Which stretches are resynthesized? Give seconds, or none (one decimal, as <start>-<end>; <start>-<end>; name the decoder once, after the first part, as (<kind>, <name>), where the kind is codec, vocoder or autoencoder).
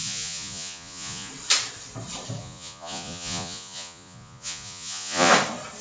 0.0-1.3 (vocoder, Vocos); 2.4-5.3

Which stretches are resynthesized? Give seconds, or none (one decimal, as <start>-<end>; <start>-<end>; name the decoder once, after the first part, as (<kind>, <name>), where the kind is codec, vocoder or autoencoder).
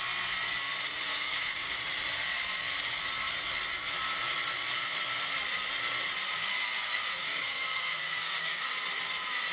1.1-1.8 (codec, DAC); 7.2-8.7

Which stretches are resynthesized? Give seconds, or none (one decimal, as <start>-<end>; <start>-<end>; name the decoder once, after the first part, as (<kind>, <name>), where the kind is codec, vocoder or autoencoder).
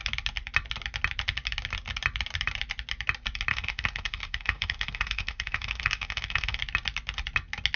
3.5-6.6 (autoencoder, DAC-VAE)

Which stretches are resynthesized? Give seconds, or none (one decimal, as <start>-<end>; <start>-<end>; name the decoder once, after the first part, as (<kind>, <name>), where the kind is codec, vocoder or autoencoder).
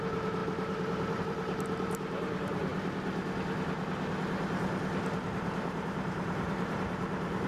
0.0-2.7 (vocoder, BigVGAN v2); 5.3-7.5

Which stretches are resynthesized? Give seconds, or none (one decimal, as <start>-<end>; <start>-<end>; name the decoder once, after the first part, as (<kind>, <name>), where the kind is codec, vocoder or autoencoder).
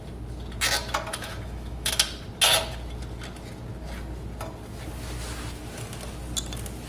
1.1-1.9 (autoencoder, DAC-VAE)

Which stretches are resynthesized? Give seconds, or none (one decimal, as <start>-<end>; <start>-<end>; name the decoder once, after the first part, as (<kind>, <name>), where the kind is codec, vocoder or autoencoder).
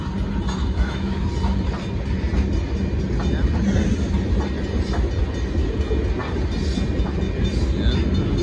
0.6-1.2 (autoencoder, DAC-VAE)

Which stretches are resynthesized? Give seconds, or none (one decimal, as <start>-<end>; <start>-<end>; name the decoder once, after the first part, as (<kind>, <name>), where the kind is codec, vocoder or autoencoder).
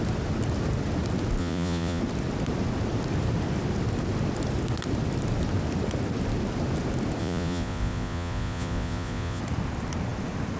1.4-2.0 (vocoder, Vocos); 7.2-9.4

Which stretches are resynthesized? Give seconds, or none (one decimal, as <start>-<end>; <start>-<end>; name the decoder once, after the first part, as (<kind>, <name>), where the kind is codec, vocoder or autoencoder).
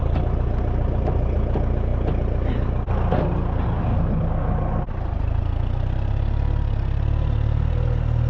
none